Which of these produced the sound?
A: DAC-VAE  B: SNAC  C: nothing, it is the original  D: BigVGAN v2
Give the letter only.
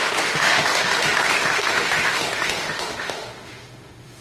A